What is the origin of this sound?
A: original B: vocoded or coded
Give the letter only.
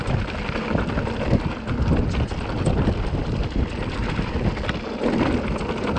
A